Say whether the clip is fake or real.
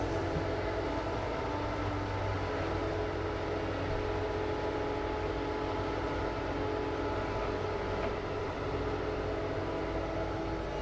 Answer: real